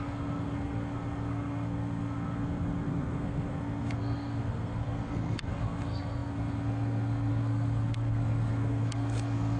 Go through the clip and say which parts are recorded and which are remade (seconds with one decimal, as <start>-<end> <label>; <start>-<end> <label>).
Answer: 0.0-9.6 remade